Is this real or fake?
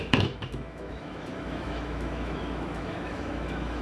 fake